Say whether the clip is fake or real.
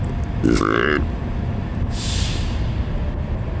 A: real